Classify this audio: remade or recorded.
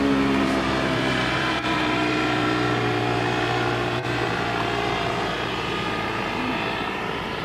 remade